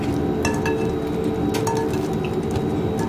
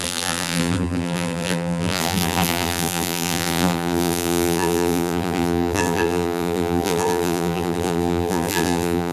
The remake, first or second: second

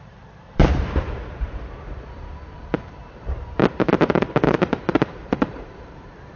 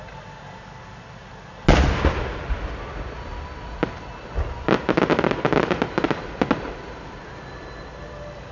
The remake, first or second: first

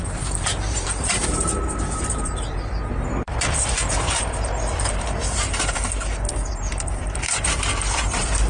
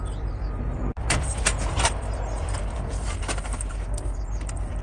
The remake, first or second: first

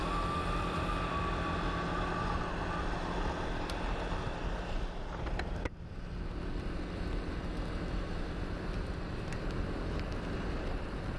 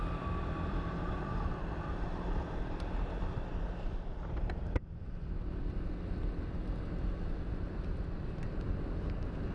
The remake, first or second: second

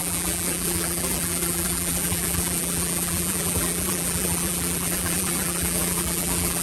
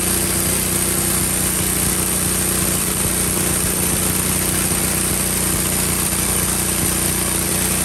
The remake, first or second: first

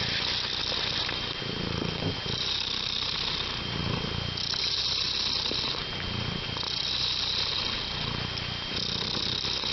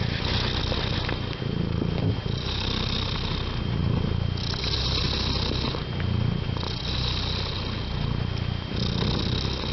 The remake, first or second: first